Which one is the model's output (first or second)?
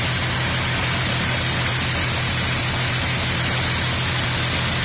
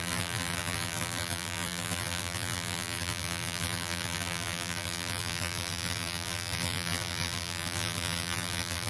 second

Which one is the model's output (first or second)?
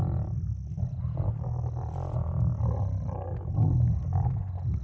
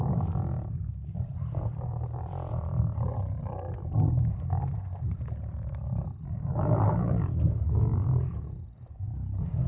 second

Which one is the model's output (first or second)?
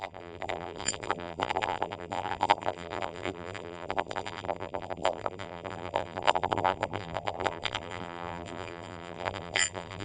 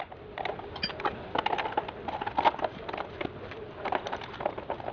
first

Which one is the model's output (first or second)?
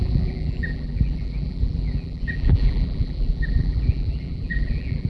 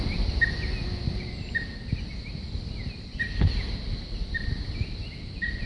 first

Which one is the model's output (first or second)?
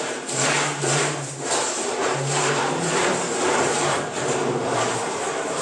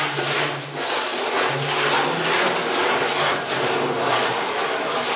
first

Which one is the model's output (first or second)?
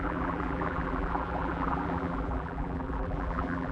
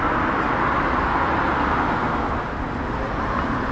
first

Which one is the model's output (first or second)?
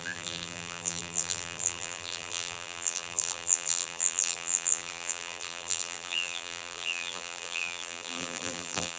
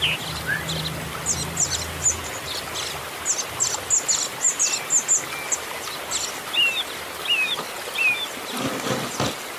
first